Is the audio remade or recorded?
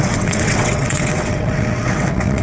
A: remade